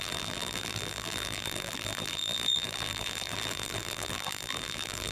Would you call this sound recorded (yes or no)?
no